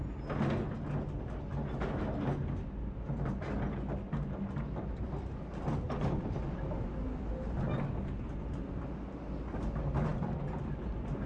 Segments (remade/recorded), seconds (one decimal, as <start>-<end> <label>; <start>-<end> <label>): 0.0-11.3 recorded